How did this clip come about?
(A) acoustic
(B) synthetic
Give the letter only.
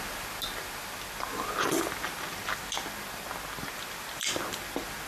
A